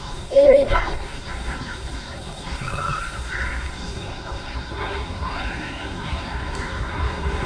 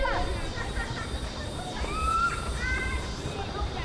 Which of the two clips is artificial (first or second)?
first